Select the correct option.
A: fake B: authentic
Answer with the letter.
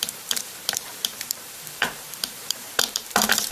A